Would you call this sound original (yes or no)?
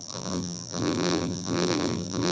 no